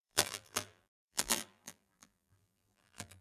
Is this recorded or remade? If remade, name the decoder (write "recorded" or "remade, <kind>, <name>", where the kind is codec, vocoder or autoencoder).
remade, vocoder, BigVGAN v2